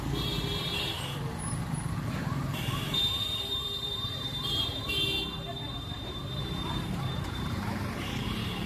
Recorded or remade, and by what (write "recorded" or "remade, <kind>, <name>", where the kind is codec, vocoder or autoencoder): remade, vocoder, BigVGAN v2